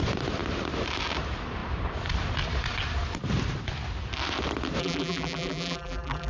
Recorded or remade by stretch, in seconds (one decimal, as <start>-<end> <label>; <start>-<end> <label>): 0.0-4.8 recorded; 4.8-6.3 remade